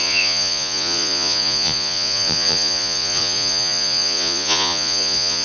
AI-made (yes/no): yes